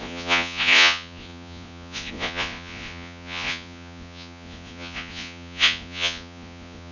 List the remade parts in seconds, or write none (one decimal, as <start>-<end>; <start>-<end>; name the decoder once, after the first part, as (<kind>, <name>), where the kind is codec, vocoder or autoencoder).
0.0-6.9 (vocoder, Vocos)